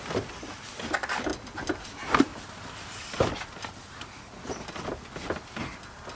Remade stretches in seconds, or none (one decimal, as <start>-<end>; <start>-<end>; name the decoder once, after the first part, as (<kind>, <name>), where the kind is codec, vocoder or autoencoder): none